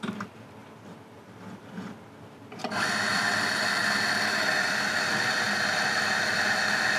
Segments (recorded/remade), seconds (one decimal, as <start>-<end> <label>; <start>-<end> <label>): 0.0-7.0 recorded